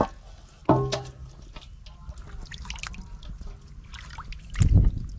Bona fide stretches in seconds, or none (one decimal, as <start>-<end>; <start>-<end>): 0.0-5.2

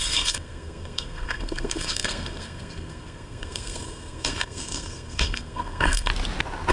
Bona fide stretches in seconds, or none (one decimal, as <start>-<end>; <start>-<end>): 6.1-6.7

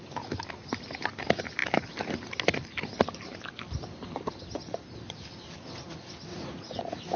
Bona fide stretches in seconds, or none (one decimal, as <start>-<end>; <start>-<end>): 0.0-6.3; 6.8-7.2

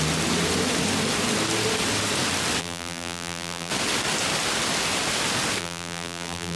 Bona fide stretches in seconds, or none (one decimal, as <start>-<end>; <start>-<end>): 0.0-2.6; 3.7-5.6

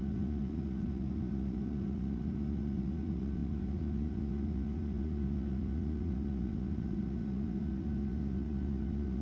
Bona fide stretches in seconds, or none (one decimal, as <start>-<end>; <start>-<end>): none

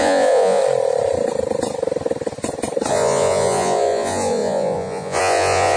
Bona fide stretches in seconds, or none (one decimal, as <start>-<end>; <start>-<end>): 0.6-2.9

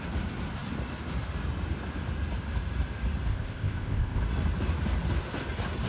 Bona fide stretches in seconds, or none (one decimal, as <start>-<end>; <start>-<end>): 0.0-3.3; 4.2-5.9

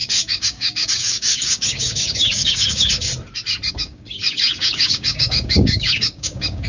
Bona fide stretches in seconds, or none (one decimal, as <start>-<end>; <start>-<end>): 3.1-3.7